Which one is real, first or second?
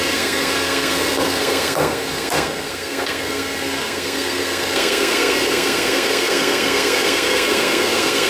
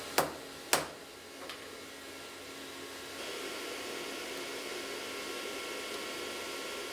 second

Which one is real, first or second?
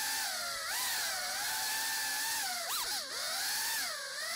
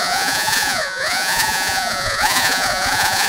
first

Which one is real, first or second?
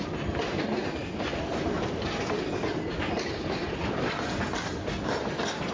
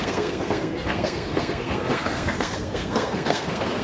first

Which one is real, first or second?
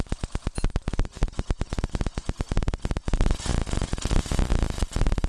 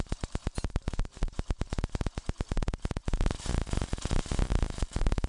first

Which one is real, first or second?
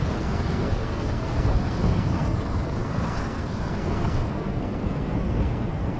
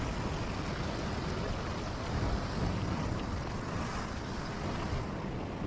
second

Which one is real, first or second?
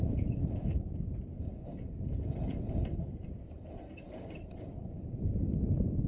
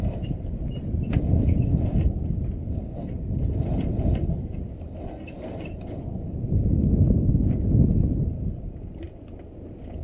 second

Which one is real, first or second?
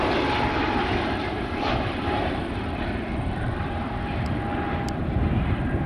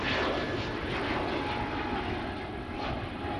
second